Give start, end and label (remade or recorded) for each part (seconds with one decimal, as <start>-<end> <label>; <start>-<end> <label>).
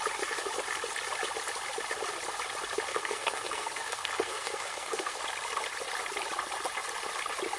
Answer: 0.0-2.9 recorded; 2.9-5.2 remade; 5.2-7.6 recorded